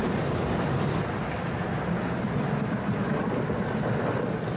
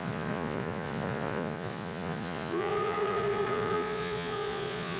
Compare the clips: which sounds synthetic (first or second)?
second